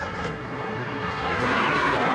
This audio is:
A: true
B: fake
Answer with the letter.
B